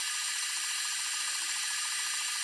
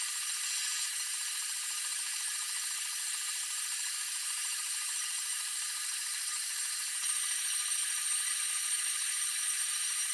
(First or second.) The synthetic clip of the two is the second